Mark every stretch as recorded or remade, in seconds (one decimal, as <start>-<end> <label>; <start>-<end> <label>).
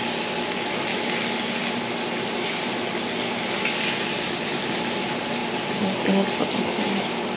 0.0-7.4 recorded